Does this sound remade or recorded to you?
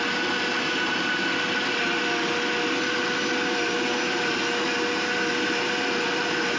recorded